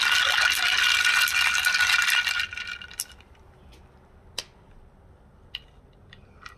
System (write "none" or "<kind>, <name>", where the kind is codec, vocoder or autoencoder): none